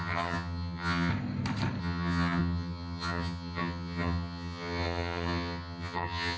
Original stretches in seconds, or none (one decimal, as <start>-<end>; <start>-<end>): 1.1-1.8